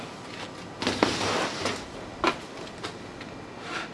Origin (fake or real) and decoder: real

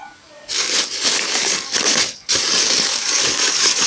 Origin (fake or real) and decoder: fake, codec, DAC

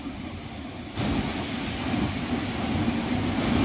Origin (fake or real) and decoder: real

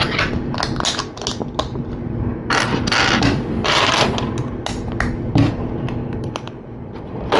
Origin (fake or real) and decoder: real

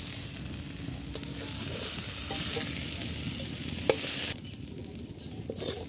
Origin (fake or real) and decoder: real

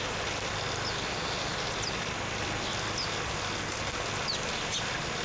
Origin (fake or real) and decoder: real